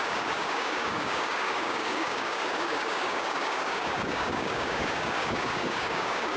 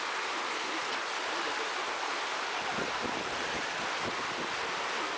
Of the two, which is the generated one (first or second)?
first